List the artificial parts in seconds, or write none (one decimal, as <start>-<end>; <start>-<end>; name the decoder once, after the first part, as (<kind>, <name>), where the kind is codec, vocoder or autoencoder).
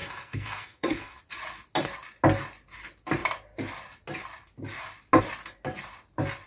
0.0-1.2 (codec, SNAC)